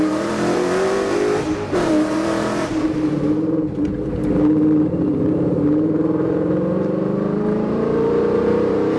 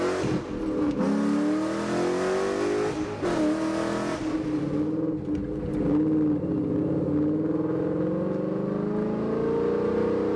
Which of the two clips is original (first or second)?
second